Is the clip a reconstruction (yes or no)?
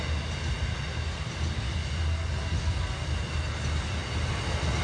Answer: no